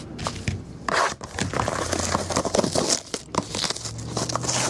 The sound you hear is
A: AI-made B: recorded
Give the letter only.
B